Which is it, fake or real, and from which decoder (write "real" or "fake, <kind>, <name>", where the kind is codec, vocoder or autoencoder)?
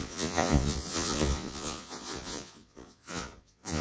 fake, vocoder, Vocos